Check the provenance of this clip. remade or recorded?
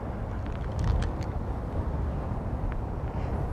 recorded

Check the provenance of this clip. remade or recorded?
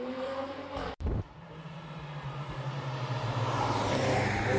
remade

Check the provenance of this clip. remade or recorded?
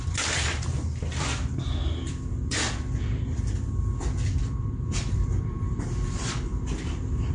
remade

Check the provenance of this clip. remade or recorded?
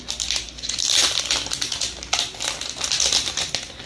recorded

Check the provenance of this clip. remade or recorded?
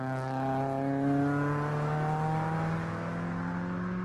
recorded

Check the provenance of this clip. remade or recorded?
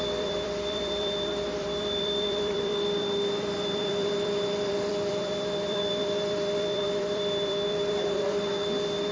remade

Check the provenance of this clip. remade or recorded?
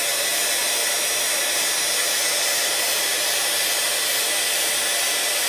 recorded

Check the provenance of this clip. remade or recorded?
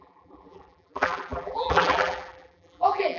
remade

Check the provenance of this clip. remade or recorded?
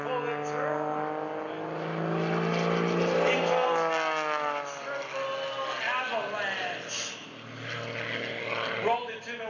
recorded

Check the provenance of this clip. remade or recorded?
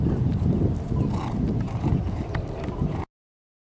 recorded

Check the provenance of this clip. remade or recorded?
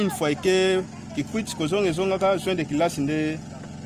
recorded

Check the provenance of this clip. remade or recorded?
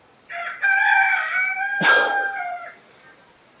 remade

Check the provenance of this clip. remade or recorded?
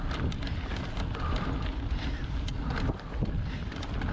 recorded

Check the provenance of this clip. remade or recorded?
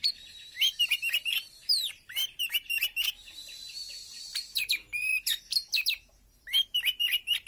remade